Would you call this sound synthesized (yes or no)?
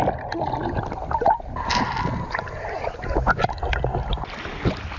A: no